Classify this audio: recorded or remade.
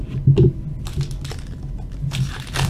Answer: recorded